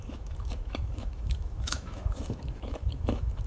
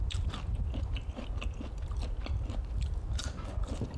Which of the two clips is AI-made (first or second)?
first